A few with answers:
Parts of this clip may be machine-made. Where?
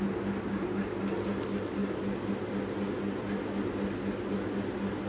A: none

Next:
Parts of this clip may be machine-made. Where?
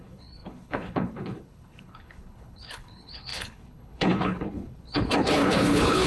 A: 0.0-6.1 (codec, HILCodec)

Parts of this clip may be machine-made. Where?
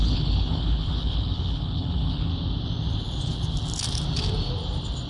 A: 0.0-2.3 (codec, HILCodec)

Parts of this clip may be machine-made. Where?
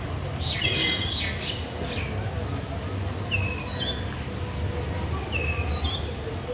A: none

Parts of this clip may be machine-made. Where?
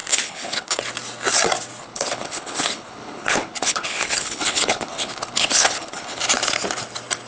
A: 0.0-0.8 (codec, HILCodec); 1.8-6.2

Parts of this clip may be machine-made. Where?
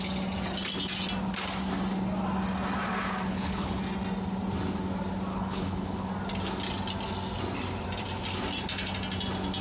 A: 3.3-3.8 (codec, HILCodec); 5.3-6.1